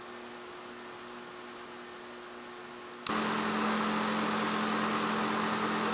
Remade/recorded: recorded